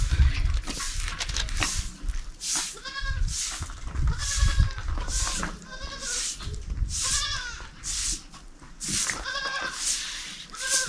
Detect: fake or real fake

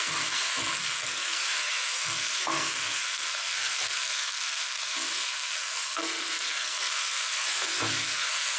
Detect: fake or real fake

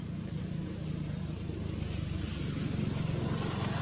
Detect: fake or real real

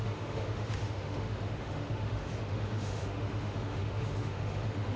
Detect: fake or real fake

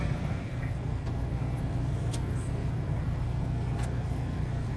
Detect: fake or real fake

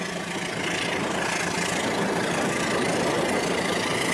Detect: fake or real real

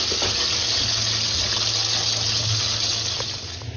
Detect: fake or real real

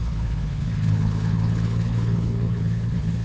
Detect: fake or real fake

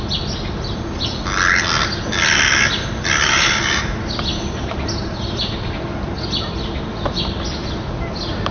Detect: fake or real real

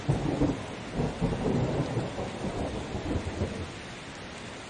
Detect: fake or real real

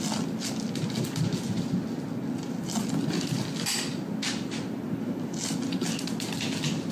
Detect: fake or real real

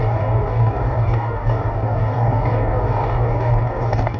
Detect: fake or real fake